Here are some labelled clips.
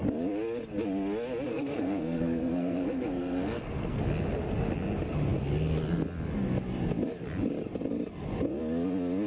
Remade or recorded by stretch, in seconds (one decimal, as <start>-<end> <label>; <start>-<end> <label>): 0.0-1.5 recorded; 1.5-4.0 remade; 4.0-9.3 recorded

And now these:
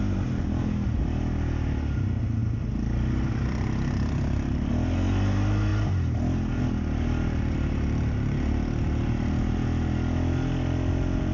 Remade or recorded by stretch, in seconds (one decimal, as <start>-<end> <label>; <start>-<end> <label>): 0.0-2.4 recorded; 2.4-4.7 remade; 4.7-11.3 recorded

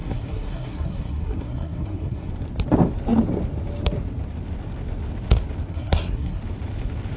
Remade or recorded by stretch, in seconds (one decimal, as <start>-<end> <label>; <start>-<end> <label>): 0.0-2.3 remade; 2.3-5.7 recorded; 5.7-6.4 remade; 6.4-7.2 recorded

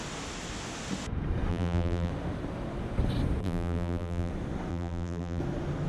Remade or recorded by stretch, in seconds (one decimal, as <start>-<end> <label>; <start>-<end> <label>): 0.0-1.5 recorded; 1.5-2.1 remade; 2.1-3.4 recorded; 3.4-4.3 remade; 4.3-4.7 recorded; 4.7-5.4 remade; 5.4-5.9 recorded